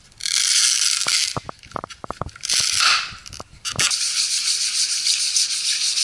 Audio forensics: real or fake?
real